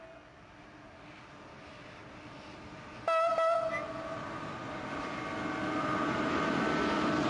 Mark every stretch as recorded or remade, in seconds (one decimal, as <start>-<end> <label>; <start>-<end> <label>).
0.0-7.3 recorded